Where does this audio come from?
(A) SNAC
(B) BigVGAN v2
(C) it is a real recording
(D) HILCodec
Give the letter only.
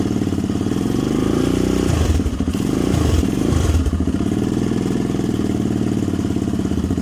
C